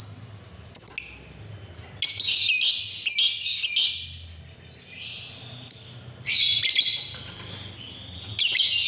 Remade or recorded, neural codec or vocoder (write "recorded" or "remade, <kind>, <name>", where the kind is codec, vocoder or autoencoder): recorded